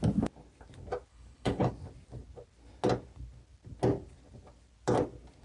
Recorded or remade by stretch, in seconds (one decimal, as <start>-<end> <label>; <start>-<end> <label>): 0.0-1.1 recorded; 1.1-1.7 remade; 1.7-5.4 recorded